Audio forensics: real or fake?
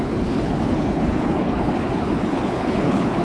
fake